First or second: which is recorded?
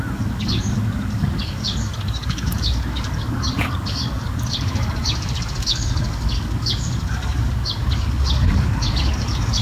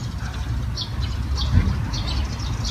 second